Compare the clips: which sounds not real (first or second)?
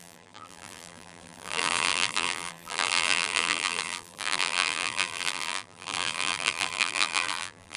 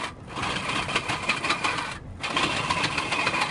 first